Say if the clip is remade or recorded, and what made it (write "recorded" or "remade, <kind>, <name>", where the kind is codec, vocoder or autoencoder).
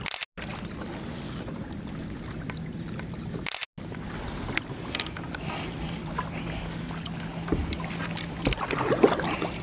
recorded